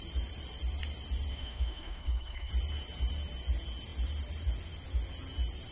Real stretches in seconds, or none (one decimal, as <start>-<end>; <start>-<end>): 0.0-1.3; 2.5-5.7